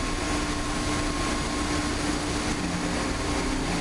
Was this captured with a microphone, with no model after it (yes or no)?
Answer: yes